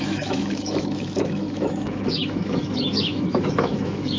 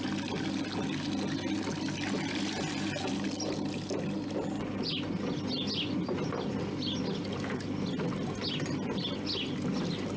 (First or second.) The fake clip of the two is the first